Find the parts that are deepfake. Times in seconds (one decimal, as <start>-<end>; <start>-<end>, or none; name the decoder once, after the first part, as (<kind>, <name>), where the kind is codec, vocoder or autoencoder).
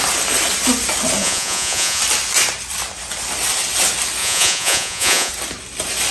1.2-2.0 (vocoder, Vocos); 4.2-5.3